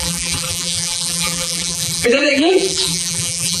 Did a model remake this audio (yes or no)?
yes